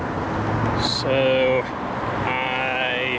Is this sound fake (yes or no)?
no